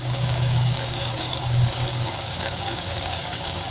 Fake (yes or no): yes